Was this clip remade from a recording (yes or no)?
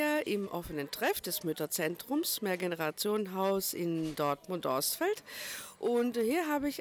no